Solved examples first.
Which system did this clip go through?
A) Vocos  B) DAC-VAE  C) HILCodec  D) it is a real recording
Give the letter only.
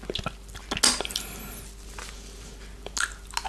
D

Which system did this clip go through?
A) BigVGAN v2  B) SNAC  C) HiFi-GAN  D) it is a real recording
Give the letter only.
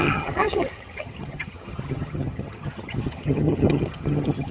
C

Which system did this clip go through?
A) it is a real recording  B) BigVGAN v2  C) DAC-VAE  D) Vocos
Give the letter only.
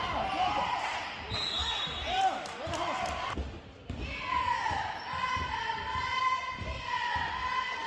A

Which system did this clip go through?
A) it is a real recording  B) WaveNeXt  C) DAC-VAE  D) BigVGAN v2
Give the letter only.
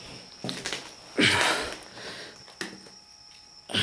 A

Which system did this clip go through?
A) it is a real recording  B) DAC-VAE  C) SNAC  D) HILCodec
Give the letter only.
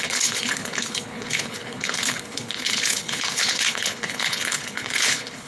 D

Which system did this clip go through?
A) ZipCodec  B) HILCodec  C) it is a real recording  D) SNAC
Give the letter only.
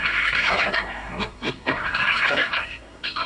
D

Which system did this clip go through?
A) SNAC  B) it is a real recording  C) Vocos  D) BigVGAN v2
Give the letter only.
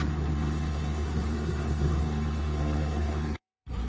A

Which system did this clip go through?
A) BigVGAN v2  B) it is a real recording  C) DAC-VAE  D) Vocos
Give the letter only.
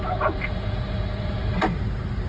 B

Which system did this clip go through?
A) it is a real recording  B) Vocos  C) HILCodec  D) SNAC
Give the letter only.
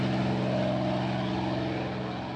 A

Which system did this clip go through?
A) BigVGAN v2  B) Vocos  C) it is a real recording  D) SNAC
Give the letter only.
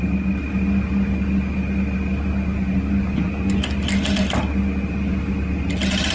C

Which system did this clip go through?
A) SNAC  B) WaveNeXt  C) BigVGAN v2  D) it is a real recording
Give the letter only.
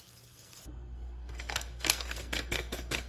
A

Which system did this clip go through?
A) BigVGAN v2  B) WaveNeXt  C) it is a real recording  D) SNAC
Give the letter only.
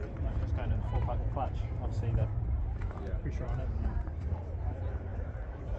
A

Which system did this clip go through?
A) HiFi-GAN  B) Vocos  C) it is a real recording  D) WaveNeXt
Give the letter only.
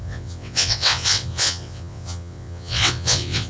D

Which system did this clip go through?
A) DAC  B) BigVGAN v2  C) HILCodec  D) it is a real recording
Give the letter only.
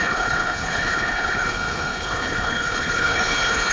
C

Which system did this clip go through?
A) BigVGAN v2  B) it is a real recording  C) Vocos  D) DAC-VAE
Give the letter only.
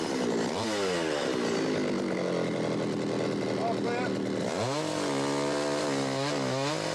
B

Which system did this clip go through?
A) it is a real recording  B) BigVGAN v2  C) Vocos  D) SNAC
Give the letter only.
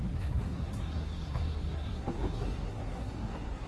D